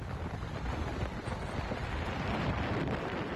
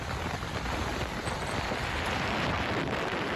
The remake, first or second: first